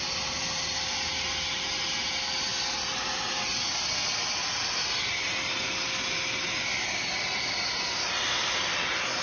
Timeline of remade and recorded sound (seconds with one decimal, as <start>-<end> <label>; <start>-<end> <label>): 0.0-9.2 recorded